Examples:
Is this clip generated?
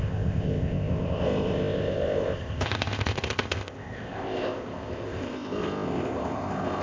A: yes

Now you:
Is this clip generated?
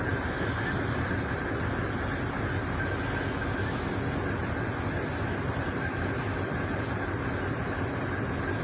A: no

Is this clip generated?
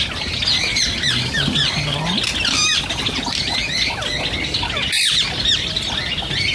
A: no